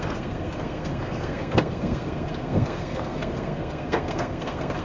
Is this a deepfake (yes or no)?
yes